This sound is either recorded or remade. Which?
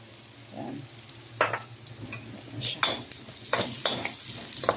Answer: recorded